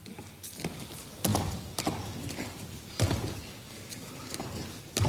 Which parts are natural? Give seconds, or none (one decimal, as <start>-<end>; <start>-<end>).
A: 0.0-5.1